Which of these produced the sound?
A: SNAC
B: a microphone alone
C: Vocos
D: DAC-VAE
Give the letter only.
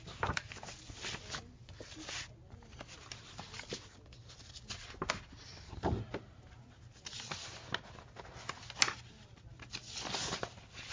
B